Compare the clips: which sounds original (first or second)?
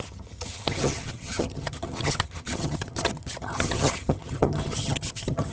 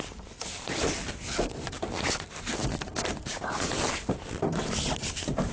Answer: second